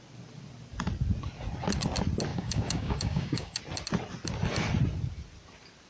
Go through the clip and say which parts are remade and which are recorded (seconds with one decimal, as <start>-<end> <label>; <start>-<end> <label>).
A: 0.0-2.3 recorded; 2.3-3.6 remade; 3.6-5.9 recorded